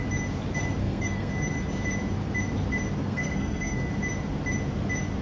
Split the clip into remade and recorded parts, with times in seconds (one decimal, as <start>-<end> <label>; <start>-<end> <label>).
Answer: 0.0-0.8 recorded; 0.8-1.3 remade; 1.3-3.0 recorded; 3.0-3.9 remade; 3.9-5.2 recorded